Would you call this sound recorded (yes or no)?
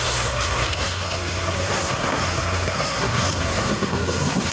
no